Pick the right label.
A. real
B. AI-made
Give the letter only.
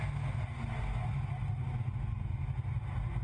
A